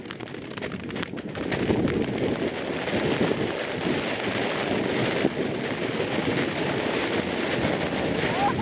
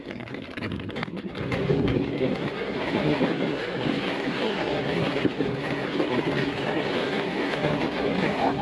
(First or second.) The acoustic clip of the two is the first